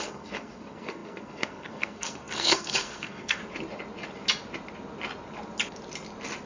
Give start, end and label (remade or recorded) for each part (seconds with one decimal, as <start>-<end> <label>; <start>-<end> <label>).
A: 0.0-3.4 remade; 3.4-6.5 recorded

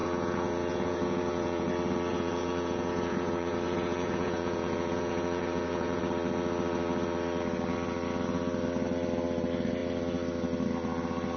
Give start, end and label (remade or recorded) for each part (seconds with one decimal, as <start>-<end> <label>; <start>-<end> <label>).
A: 0.0-1.7 remade; 1.7-2.1 recorded; 2.1-6.0 remade; 6.0-11.4 recorded

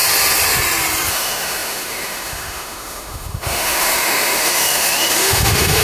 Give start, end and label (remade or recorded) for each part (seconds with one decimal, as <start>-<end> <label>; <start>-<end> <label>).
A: 0.0-1.1 recorded; 1.1-5.8 remade

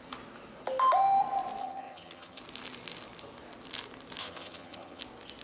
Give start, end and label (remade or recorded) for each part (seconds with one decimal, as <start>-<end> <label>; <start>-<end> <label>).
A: 0.0-1.6 recorded; 1.6-2.4 remade; 2.4-4.2 recorded; 4.2-5.0 remade; 5.0-5.4 recorded

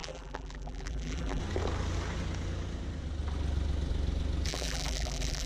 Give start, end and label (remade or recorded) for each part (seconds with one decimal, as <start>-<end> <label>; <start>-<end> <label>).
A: 0.0-1.4 remade; 1.4-4.5 recorded; 4.5-5.5 remade

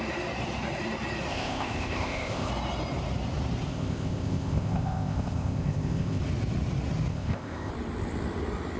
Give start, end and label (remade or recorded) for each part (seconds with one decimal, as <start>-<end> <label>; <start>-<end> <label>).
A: 0.0-1.3 recorded; 1.3-2.5 remade; 2.5-3.7 recorded; 3.7-6.2 remade; 6.2-7.1 recorded; 7.1-7.7 remade; 7.7-8.8 recorded